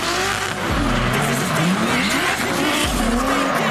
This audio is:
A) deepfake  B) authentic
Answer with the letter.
B